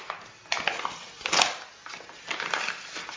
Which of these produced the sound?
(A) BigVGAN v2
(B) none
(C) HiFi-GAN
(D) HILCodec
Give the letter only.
B